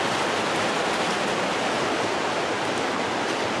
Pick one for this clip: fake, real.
real